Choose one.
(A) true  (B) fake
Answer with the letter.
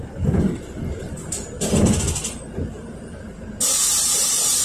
A